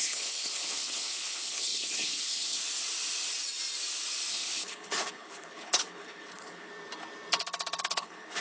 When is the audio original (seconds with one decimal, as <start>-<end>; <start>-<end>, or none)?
2.6-4.3; 6.7-7.8